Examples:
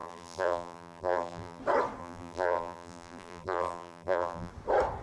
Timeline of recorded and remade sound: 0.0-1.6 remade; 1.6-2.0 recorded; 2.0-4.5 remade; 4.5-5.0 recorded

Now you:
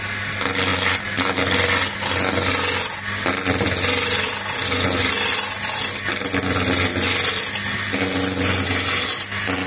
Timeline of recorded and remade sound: 0.0-9.7 recorded

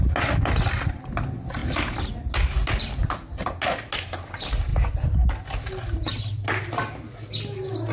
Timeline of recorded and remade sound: 0.0-7.9 recorded

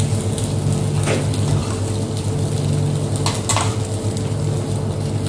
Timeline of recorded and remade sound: 0.0-5.3 recorded